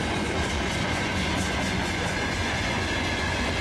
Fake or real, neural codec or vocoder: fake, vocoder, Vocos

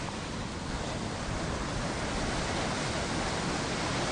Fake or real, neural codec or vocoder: real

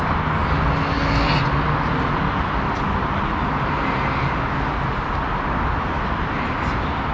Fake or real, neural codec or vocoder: real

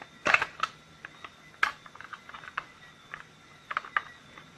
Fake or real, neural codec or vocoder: real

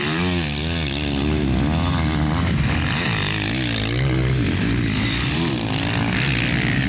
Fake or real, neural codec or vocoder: real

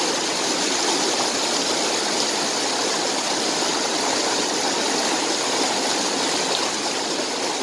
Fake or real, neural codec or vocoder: real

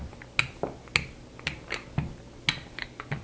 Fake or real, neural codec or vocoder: real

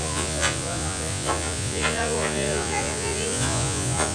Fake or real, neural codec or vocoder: fake, vocoder, Vocos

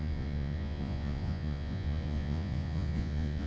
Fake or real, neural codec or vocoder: fake, vocoder, Vocos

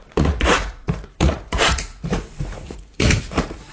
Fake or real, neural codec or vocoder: fake, vocoder, Vocos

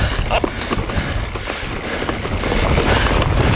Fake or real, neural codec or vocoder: real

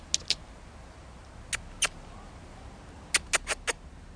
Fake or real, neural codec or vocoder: real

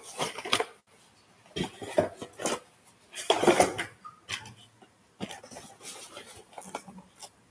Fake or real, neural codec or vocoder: real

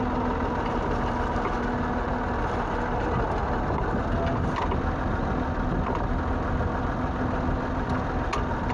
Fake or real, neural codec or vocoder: real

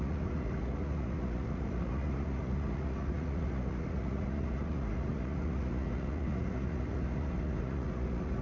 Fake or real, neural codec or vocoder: fake, vocoder, Vocos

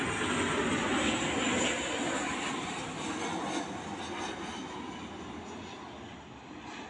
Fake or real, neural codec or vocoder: real